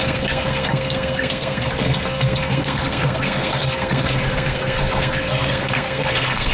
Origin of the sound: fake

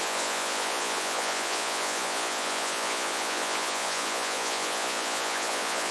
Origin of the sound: fake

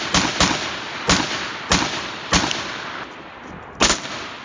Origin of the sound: real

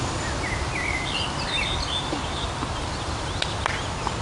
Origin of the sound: real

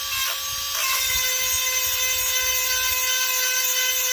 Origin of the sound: real